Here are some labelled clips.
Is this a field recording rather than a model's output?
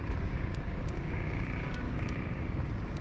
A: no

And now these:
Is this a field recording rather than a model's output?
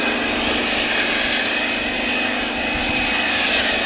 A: yes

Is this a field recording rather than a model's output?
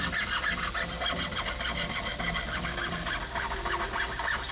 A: yes